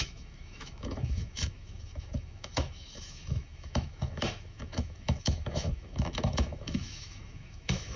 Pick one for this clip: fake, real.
fake